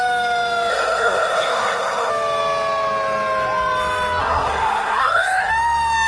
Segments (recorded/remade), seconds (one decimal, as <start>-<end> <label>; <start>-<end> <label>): 0.0-0.7 recorded; 0.7-2.1 remade; 2.1-4.2 recorded; 4.2-5.5 remade; 5.5-6.1 recorded